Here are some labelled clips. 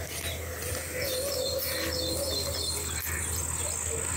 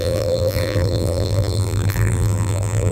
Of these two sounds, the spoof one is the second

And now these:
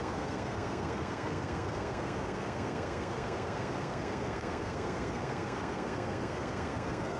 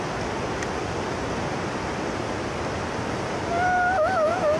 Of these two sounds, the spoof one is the first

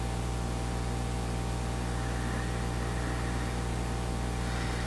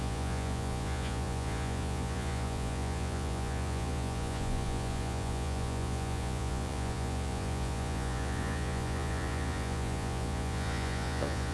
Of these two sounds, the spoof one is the second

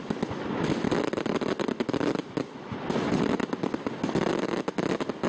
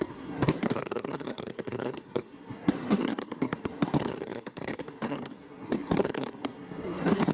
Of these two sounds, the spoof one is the second